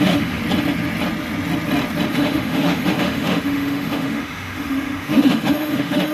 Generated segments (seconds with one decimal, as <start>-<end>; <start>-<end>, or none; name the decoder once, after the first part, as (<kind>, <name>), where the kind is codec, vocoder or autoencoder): 0.0-0.4 (autoencoder, DAC-VAE); 2.1-6.1

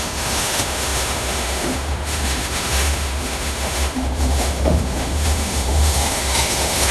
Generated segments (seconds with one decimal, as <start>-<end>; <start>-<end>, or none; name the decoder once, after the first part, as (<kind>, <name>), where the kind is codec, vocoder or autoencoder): 0.0-6.9 (autoencoder, DAC-VAE)

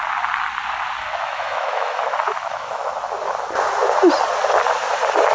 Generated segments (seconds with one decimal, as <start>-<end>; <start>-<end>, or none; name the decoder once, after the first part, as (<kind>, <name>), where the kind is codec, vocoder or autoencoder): 1.0-2.9 (autoencoder, DAC-VAE)

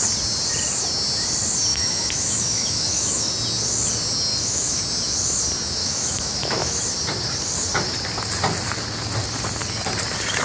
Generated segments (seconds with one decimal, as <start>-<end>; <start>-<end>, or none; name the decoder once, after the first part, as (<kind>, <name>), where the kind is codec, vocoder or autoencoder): 1.7-3.3 (autoencoder, DAC-VAE); 4.3-4.8; 5.8-6.8

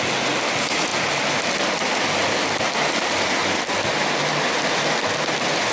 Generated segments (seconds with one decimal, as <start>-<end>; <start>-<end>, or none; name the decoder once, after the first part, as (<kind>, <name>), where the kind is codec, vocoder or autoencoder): none